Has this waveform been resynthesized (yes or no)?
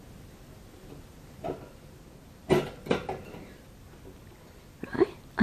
no